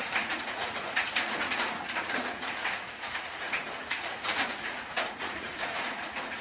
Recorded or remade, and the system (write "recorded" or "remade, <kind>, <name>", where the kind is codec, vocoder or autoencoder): remade, vocoder, Vocos